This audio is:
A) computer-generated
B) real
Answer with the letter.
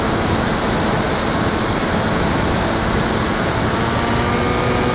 B